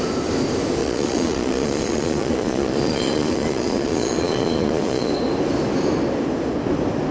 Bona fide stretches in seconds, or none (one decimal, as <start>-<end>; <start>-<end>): 0.0-0.8; 5.1-7.1